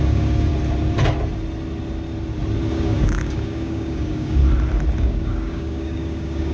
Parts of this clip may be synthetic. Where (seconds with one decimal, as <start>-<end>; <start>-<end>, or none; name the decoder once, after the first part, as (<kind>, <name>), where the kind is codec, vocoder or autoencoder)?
0.0-0.5 (codec, DAC); 2.7-4.4; 5.0-6.5